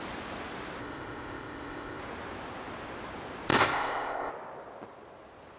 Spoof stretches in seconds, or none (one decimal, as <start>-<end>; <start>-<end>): 0.8-2.0; 3.5-4.3